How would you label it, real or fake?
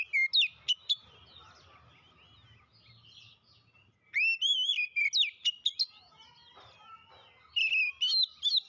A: real